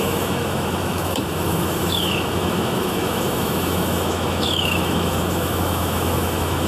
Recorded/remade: remade